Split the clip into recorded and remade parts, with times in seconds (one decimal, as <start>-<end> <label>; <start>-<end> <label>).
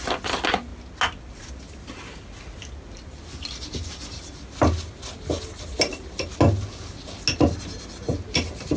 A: 0.0-8.8 recorded